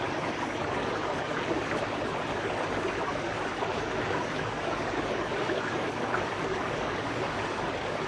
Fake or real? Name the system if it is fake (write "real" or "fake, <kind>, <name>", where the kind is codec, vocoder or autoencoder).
fake, codec, DAC